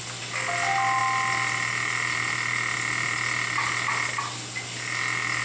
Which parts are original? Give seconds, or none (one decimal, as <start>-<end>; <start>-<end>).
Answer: 0.0-5.4